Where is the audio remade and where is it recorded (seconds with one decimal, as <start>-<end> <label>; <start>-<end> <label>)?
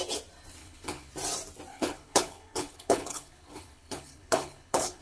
0.0-0.6 recorded; 0.6-1.1 remade; 1.1-1.7 recorded; 1.7-5.0 remade